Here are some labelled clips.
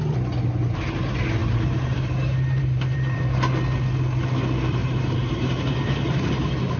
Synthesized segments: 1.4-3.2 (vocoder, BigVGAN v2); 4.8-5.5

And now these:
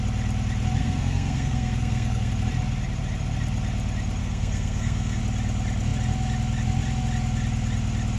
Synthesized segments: 0.8-2.3 (codec, SNAC); 4.2-5.2

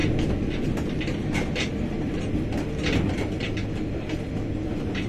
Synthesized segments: none

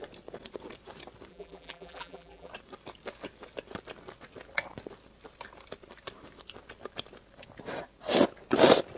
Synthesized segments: 1.3-2.5 (vocoder, BigVGAN v2)

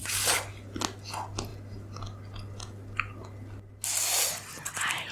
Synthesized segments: none